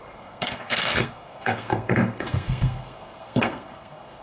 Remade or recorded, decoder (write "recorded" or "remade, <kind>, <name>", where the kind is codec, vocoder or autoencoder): remade, codec, SNAC